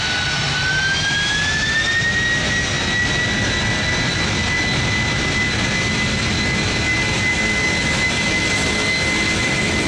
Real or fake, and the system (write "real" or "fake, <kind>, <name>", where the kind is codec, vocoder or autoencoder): real